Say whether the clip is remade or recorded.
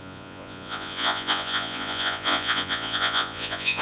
remade